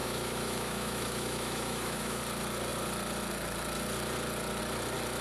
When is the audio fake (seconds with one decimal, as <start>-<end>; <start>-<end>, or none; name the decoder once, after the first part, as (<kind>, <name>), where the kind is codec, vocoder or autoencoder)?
0.0-2.2 (autoencoder, DAC-VAE)